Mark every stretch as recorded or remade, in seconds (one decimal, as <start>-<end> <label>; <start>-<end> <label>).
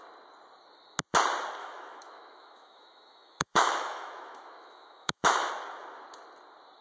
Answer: 0.0-1.6 recorded; 1.6-5.5 remade; 5.5-6.8 recorded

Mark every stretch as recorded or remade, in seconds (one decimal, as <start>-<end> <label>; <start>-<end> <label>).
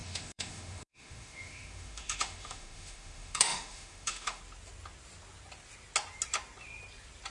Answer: 0.0-4.4 remade; 4.4-7.3 recorded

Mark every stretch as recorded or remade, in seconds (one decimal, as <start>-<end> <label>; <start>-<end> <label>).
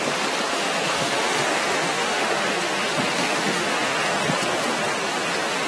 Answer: 0.0-0.5 recorded; 0.5-3.9 remade; 3.9-5.7 recorded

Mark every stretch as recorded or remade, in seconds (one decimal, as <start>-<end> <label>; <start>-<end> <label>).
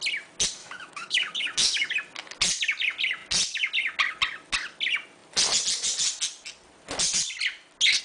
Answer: 0.0-0.6 recorded; 0.6-1.9 remade; 1.9-8.0 recorded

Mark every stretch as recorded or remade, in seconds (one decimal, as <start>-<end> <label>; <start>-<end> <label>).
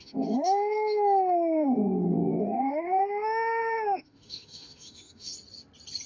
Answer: 0.0-5.3 remade; 5.3-6.1 recorded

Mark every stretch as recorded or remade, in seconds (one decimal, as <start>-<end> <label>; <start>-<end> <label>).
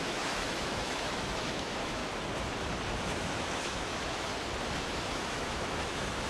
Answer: 0.0-2.0 remade; 2.0-3.2 recorded; 3.2-4.3 remade; 4.3-4.8 recorded; 4.8-6.3 remade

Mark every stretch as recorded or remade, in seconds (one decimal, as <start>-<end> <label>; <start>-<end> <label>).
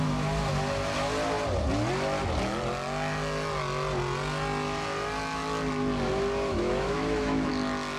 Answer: 0.0-6.5 recorded; 6.5-7.5 remade; 7.5-8.0 recorded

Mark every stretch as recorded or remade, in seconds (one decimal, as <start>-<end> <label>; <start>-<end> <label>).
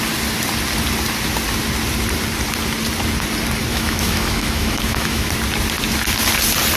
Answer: 0.0-3.7 recorded; 3.7-5.3 remade; 5.3-6.8 recorded